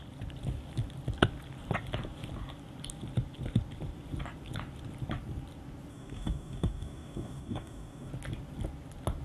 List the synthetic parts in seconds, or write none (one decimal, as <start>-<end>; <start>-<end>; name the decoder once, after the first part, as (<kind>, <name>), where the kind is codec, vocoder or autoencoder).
5.9-8.1 (codec, DAC)